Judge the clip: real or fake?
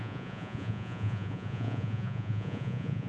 fake